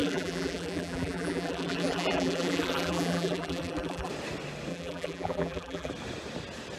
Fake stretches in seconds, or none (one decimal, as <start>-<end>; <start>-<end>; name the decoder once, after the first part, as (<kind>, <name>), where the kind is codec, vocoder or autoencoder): 0.0-4.1 (vocoder, BigVGAN v2); 4.7-5.9